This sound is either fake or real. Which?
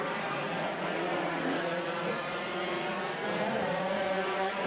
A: fake